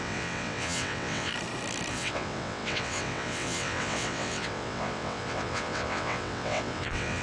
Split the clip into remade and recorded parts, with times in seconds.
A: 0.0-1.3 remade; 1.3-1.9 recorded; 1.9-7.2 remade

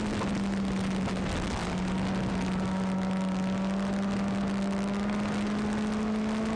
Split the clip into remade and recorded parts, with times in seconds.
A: 0.0-6.6 recorded

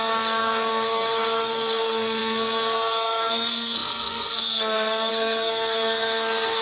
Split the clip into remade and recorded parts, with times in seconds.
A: 0.0-6.6 remade

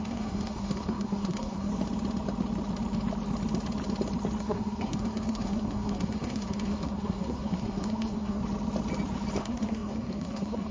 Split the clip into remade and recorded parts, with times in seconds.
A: 0.0-1.7 remade; 1.7-4.4 recorded; 4.4-8.4 remade; 8.4-9.4 recorded; 9.4-10.7 remade

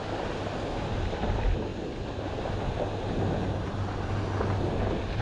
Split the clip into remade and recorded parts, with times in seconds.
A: 0.0-5.2 recorded